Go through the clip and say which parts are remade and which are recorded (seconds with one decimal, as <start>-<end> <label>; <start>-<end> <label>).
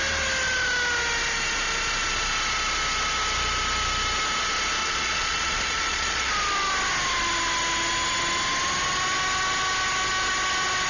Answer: 0.0-4.8 recorded; 4.8-6.3 remade; 6.3-10.9 recorded